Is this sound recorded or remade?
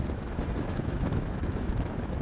remade